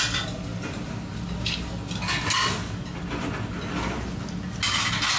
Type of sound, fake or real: real